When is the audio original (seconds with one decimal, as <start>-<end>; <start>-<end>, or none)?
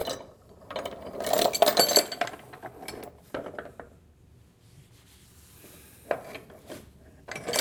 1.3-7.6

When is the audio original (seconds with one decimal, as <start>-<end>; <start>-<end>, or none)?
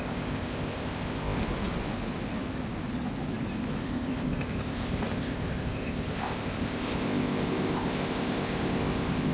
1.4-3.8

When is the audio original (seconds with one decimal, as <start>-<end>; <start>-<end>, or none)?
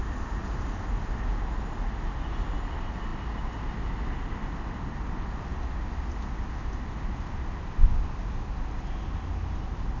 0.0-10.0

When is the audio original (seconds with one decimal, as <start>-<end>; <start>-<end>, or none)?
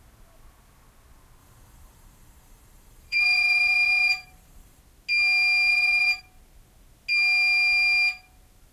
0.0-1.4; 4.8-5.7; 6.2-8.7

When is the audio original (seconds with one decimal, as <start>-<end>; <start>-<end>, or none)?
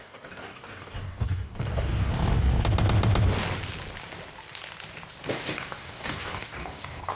2.1-5.3